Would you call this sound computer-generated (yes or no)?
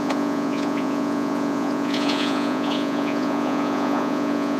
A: yes